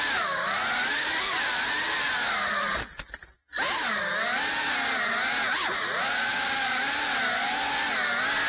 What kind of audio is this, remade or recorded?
recorded